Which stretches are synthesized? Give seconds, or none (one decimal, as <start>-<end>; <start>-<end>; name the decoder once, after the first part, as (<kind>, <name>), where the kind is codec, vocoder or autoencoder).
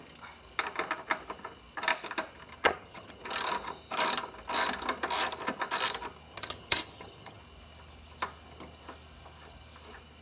2.6-3.2 (vocoder, HiFi-GAN); 6.3-7.4